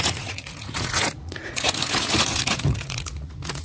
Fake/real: fake